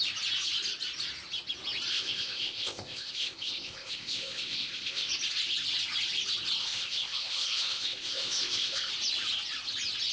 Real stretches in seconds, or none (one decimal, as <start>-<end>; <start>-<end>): 0.0-1.9; 5.1-6.6; 8.9-10.1